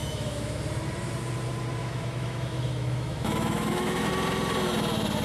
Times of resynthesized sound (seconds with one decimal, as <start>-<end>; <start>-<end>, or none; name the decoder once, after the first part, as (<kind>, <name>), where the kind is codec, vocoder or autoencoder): 0.0-0.6 (autoencoder, DAC-VAE); 1.8-4.1